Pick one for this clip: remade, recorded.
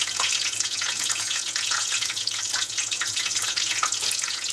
remade